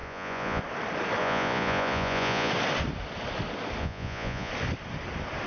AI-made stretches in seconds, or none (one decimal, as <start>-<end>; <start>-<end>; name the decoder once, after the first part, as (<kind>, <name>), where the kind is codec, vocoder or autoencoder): 0.0-0.6 (vocoder, Vocos); 1.2-2.5; 3.8-4.5

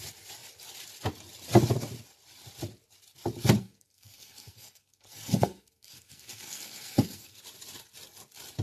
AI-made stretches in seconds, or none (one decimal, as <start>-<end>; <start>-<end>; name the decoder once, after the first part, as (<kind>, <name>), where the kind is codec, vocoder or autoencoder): 3.6-7.4 (codec, SNAC)

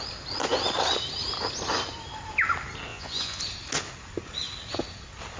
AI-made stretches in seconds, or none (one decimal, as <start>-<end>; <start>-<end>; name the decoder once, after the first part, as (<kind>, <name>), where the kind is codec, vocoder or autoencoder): 2.9-3.4 (vocoder, Vocos)

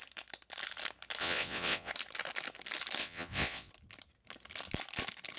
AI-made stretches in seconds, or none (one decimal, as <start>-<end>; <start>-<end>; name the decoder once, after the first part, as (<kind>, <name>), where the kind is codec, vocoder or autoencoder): 1.2-1.9 (vocoder, WaveNeXt); 3.0-3.7

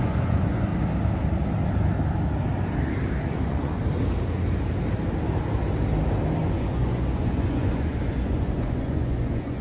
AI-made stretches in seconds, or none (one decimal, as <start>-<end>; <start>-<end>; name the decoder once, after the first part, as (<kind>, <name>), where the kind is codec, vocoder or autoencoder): 0.0-0.7 (vocoder, Vocos); 3.3-3.8; 6.4-9.6

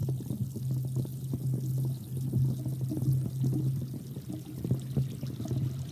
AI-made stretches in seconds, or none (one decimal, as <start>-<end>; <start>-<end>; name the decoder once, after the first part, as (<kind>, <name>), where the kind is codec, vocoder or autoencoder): none